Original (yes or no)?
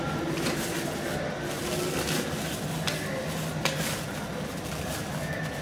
yes